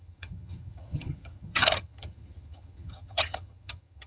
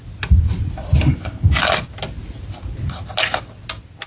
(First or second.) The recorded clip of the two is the second